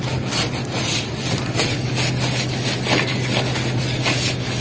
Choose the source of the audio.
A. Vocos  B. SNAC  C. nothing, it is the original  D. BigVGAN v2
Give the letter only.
C